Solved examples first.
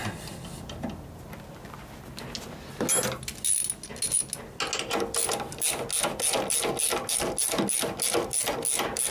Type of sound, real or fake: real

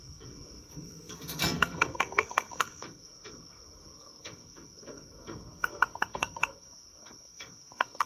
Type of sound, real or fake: fake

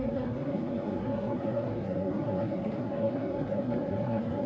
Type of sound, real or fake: fake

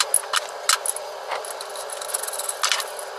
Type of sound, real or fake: real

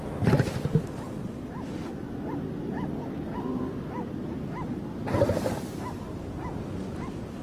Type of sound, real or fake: real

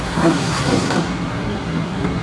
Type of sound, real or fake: fake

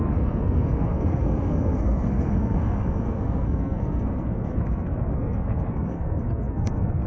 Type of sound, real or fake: fake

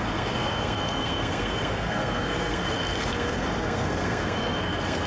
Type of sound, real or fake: fake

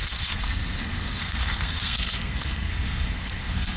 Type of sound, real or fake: fake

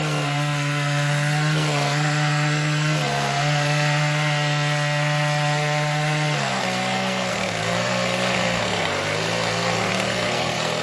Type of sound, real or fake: fake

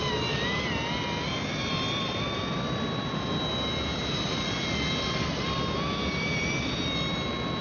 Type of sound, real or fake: real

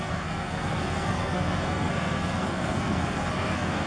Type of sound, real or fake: fake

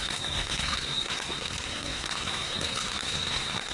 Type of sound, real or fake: fake